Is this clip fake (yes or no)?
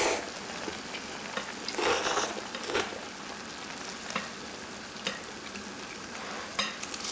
no